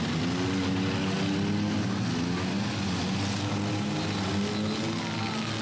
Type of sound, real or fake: real